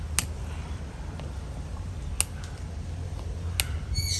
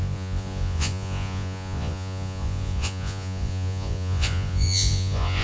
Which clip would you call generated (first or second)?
second